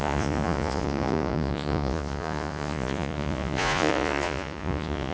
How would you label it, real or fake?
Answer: fake